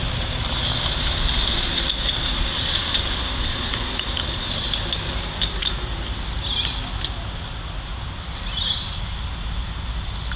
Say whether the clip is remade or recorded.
recorded